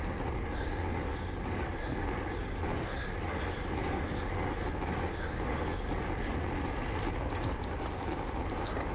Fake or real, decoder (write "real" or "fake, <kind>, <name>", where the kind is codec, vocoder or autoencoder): real